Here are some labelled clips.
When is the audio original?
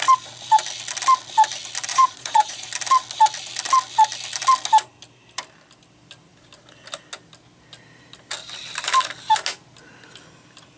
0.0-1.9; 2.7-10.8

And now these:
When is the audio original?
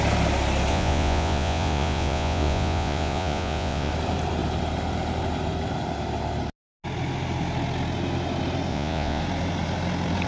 0.0-0.7; 3.9-8.7; 9.2-10.3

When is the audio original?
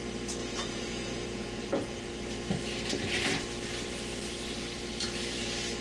0.0-0.4; 2.1-5.8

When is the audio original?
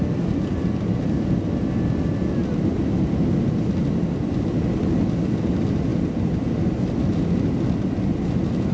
0.0-8.7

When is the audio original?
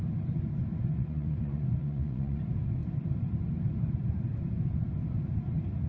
0.0-0.9; 2.4-5.9